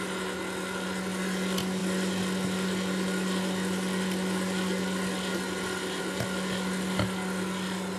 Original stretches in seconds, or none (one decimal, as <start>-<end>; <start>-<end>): 0.0-8.0